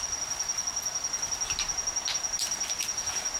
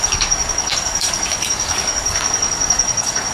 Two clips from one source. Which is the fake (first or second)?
second